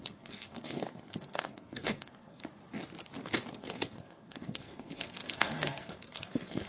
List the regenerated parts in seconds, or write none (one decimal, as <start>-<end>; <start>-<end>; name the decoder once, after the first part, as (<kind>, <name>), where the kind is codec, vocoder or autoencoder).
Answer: 0.0-2.4 (codec, SNAC); 3.5-6.7